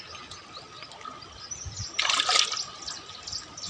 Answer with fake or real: real